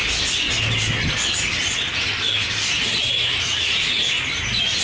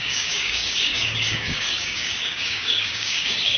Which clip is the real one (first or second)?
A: first